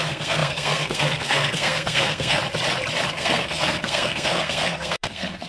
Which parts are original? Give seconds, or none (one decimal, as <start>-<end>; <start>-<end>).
2.4-3.1